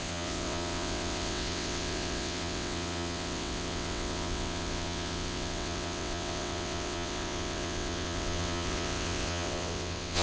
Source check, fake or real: fake